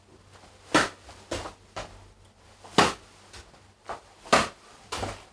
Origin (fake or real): real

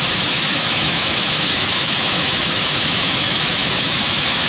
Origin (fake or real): fake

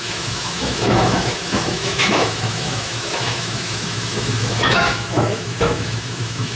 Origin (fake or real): fake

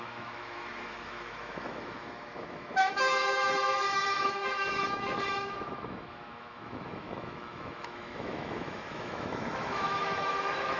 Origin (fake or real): fake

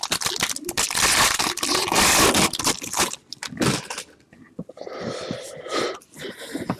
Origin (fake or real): real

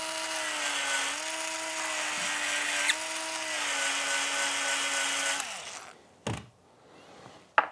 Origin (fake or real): real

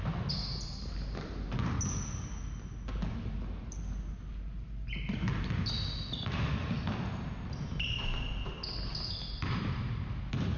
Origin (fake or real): real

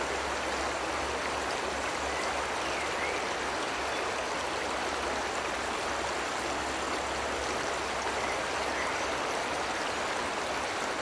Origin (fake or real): real